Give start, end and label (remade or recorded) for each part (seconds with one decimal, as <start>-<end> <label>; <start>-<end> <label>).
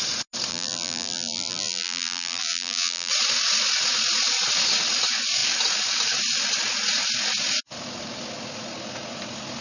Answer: 0.0-0.5 recorded; 0.5-3.1 remade; 3.1-9.6 recorded